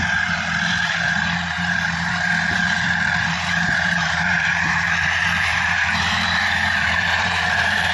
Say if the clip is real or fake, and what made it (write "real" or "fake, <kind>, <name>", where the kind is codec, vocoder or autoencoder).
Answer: fake, vocoder, BigVGAN v2